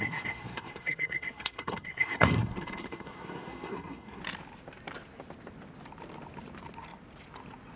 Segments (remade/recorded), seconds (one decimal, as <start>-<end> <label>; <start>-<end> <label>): 0.0-4.2 remade; 4.2-7.8 recorded